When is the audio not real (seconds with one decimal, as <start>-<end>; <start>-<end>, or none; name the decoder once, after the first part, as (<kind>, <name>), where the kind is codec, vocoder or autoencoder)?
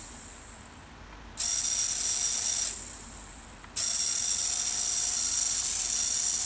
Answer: none